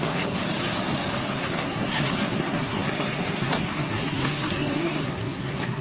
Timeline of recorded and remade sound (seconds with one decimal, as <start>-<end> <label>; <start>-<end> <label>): 0.0-0.4 remade; 0.4-1.3 recorded; 1.3-5.8 remade

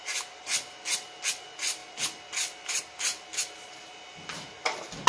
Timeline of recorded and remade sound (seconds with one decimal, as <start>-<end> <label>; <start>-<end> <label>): 0.0-5.1 recorded